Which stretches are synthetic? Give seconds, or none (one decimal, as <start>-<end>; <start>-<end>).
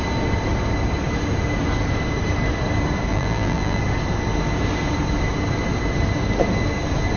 3.1-3.8